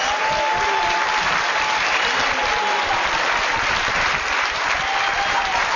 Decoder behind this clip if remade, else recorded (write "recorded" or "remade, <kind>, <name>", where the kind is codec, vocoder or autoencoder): recorded